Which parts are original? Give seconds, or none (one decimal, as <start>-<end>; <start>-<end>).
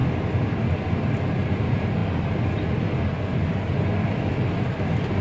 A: 0.0-5.2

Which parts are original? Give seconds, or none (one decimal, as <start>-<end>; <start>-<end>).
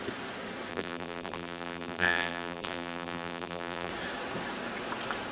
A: 0.0-0.7; 3.9-5.3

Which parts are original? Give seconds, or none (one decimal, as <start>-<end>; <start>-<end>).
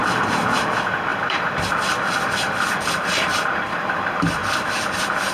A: 4.4-5.3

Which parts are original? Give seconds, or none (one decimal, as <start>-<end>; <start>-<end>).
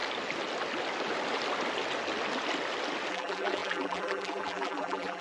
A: 0.0-3.1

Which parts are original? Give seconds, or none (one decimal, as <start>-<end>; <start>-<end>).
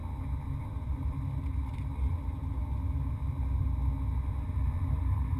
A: 0.0-0.6; 2.6-4.9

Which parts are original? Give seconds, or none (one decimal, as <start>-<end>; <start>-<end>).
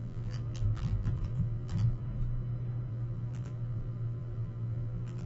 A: 2.0-2.9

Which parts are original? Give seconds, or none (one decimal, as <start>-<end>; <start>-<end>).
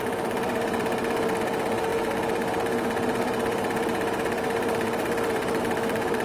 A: none